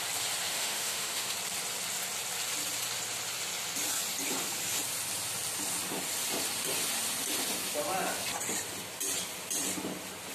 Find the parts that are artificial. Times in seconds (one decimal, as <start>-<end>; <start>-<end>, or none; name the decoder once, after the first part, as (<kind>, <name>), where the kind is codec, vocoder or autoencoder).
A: 0.5-1.3 (autoencoder, DAC-VAE)